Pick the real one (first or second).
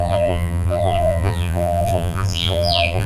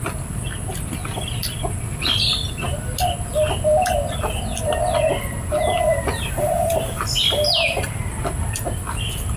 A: second